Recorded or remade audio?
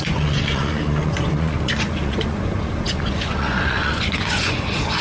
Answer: remade